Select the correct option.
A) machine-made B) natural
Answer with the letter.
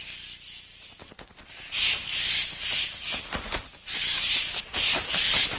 A